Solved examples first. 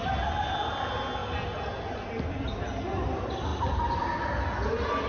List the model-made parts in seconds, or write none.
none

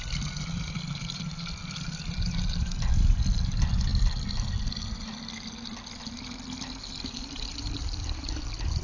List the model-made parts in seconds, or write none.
none

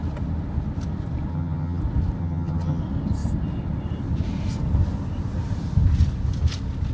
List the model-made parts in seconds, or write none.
1.3-1.8 (vocoder, HiFi-GAN); 2.2-2.8

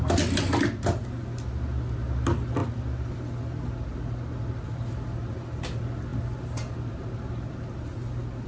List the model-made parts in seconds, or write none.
none

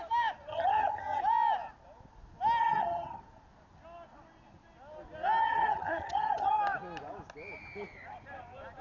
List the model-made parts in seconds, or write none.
0.5-1.2 (vocoder, HiFi-GAN); 2.6-3.2; 5.4-6.6

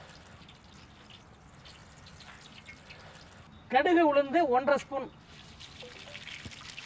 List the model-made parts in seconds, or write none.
none

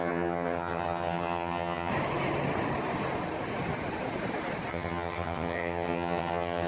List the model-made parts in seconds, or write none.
0.0-1.9 (vocoder, HiFi-GAN); 4.7-6.7

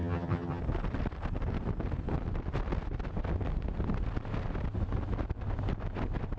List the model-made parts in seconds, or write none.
0.0-0.6 (vocoder, HiFi-GAN)